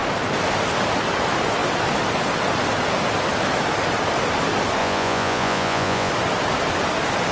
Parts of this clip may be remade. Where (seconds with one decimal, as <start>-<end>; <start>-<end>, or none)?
4.8-6.1